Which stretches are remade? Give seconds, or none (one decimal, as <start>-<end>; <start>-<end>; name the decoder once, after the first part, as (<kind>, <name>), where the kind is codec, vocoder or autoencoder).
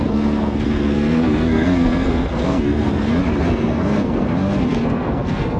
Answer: 0.0-2.9 (codec, SNAC); 3.4-5.6